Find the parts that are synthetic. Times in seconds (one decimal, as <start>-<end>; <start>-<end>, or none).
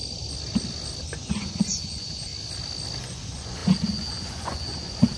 1.0-2.3; 3.0-5.2